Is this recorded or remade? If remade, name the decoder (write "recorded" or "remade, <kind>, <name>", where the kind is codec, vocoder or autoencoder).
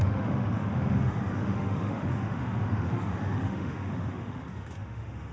remade, autoencoder, DAC-VAE